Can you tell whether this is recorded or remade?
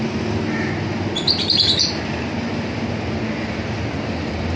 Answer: recorded